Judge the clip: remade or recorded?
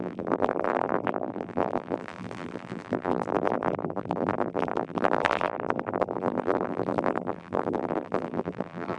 remade